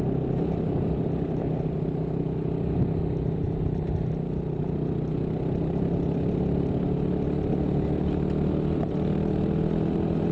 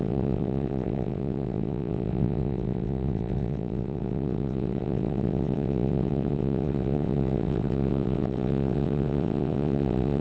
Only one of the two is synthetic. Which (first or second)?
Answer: second